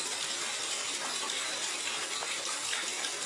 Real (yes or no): yes